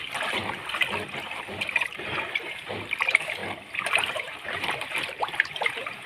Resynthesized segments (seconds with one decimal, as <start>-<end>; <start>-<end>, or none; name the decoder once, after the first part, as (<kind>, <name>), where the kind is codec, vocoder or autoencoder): 0.0-0.4 (vocoder, BigVGAN v2); 1.6-3.4; 3.9-6.1